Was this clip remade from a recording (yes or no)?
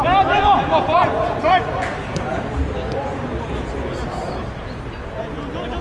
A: no